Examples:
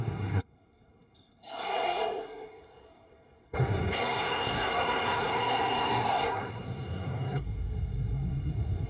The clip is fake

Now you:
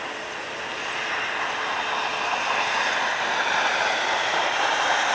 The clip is real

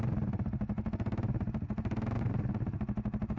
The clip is fake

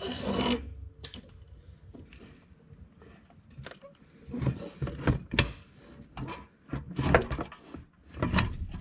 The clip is real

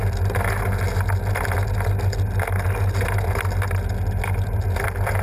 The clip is real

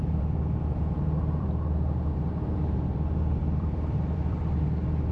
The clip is fake